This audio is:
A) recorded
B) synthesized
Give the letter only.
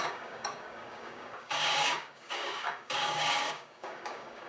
B